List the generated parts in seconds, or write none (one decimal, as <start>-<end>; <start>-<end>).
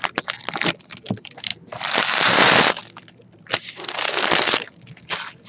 none